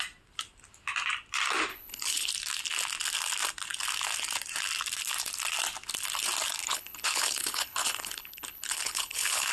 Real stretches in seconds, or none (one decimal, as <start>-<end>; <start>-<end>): 0.0-1.7; 2.3-6.6